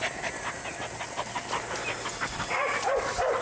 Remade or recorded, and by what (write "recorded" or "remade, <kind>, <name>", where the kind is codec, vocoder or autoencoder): recorded